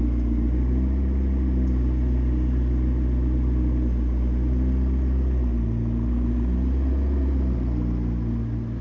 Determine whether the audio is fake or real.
real